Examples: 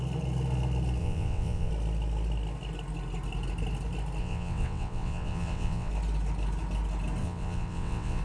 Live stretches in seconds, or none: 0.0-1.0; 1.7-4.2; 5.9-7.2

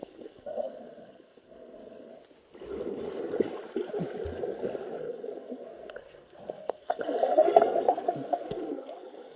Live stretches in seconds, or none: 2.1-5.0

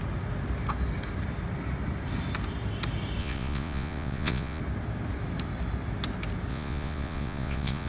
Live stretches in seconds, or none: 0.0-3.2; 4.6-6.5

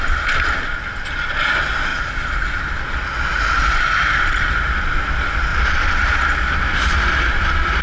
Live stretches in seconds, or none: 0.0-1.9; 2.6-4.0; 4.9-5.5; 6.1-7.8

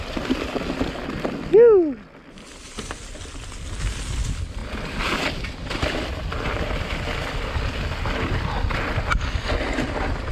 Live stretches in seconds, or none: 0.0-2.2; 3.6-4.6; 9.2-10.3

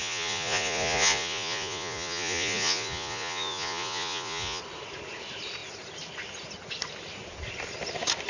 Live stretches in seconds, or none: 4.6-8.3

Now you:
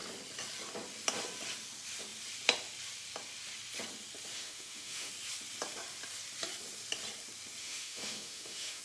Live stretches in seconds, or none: 0.0-4.3; 5.1-7.6